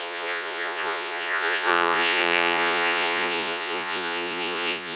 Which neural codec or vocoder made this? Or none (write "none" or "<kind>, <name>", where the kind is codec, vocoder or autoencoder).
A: vocoder, Vocos